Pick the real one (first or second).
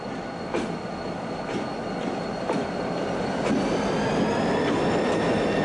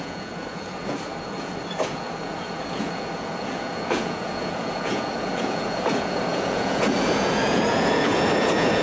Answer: first